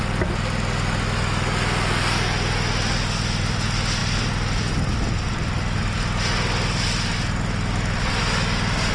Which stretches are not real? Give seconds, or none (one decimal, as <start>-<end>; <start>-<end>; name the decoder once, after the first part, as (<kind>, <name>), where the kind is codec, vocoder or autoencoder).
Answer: none